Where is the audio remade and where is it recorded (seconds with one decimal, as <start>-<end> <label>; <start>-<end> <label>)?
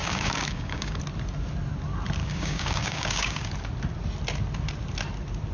0.0-1.0 remade; 1.0-2.2 recorded; 2.2-3.5 remade; 3.5-5.5 recorded